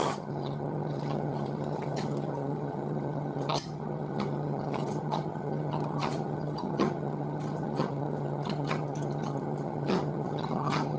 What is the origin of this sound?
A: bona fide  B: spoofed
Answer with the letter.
B